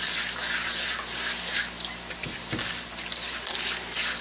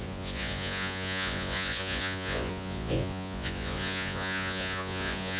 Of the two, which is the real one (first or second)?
first